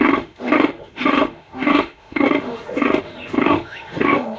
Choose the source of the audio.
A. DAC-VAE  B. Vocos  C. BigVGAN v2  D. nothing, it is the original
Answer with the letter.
A